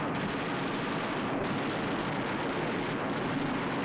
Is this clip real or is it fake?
real